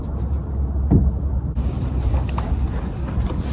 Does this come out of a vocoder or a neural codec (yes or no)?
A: no